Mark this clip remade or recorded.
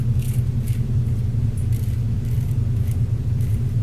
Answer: recorded